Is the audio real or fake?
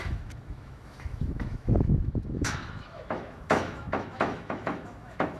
fake